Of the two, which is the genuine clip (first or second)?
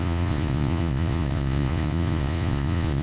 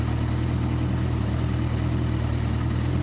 second